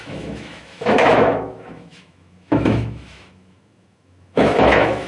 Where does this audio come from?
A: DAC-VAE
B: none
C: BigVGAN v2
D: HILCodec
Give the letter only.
A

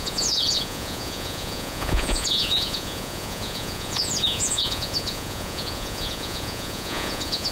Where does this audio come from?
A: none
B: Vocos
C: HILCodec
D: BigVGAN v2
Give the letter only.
B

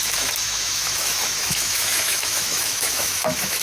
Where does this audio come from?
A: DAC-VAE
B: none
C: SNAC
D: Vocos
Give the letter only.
A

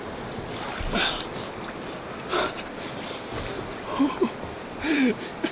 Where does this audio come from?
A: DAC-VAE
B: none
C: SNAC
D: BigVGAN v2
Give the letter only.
D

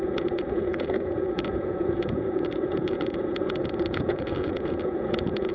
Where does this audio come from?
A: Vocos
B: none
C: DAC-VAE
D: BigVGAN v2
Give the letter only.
A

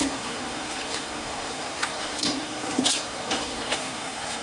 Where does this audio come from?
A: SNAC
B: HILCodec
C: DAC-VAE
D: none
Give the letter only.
A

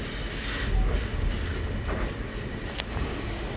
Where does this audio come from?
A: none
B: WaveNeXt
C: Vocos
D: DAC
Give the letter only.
A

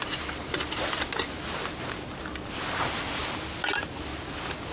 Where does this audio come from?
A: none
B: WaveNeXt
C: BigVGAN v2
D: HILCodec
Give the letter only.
A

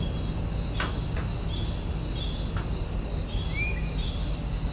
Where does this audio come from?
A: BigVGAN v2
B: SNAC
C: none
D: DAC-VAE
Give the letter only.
C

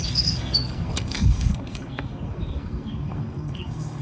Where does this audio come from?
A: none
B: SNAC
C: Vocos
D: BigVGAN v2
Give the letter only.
B